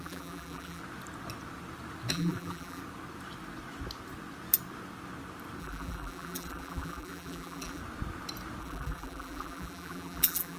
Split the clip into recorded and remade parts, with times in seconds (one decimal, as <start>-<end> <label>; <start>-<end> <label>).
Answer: 0.0-0.8 remade; 0.8-2.1 recorded; 2.1-2.8 remade; 2.8-5.6 recorded; 5.6-7.8 remade; 7.8-8.6 recorded; 8.6-10.6 remade